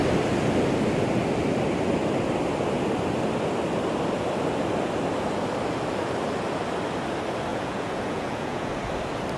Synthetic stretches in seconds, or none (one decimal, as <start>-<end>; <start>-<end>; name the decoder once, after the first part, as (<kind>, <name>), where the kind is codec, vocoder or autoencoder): 7.5-8.7 (vocoder, Vocos)